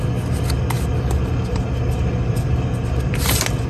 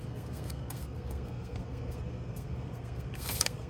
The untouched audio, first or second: first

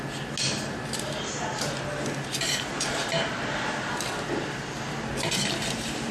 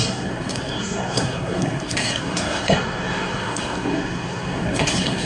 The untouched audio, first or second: first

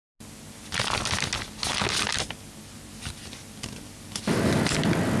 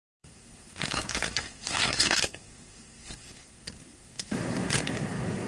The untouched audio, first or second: first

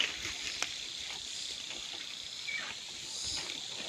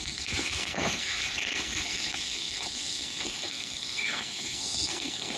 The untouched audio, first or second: first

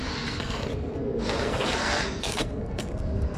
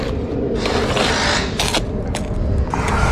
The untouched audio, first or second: second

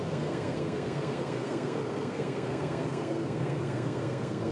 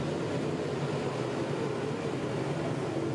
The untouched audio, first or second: second